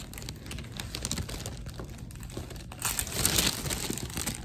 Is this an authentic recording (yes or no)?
yes